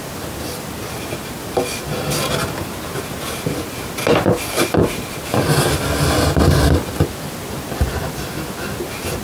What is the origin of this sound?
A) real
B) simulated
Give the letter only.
A